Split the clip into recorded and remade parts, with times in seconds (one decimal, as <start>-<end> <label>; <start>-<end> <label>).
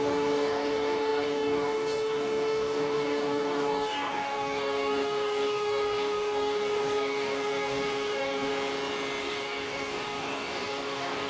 0.0-8.5 remade; 8.5-9.2 recorded; 9.2-11.3 remade